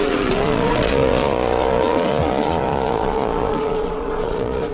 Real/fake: fake